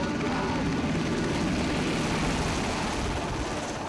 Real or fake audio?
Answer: real